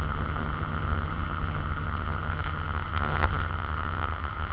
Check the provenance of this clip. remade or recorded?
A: remade